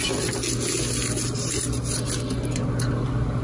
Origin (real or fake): real